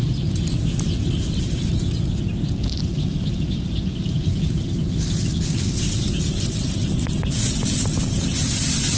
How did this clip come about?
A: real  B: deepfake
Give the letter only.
A